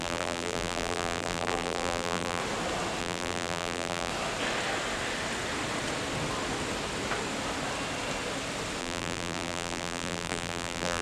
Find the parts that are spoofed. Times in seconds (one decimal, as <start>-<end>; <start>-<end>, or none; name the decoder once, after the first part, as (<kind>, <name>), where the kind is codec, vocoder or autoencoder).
0.0-2.4 (vocoder, BigVGAN v2); 3.0-4.1; 8.8-11.0